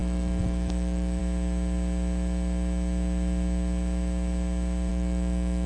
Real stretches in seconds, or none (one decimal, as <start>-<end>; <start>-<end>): 1.2-4.9